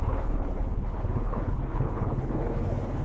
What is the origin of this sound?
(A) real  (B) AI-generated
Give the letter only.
B